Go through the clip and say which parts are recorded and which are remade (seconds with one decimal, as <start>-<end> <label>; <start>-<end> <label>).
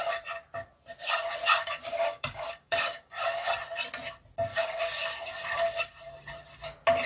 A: 0.0-1.6 recorded; 1.6-3.5 remade; 3.5-4.5 recorded; 4.5-5.9 remade; 5.9-7.1 recorded